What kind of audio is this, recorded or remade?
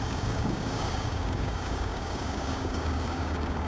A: remade